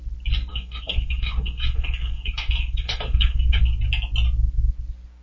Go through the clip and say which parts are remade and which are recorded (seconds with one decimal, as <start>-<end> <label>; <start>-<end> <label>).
0.0-0.5 recorded; 0.5-3.6 remade; 3.6-5.2 recorded